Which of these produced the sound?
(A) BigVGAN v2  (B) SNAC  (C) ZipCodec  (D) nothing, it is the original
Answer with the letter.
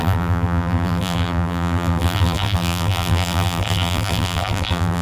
A